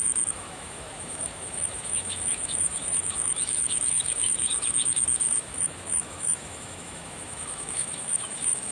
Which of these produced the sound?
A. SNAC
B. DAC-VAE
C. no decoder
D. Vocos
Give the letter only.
B